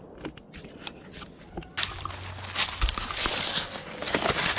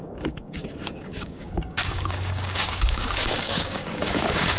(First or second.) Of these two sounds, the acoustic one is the first